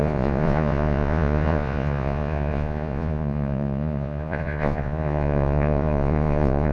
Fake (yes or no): yes